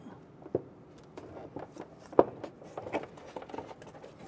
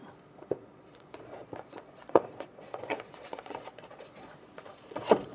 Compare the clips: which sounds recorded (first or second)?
first